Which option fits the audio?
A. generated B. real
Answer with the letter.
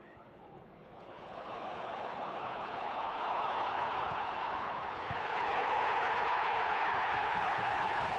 A